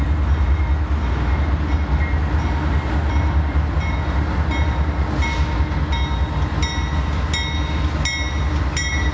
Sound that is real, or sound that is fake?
real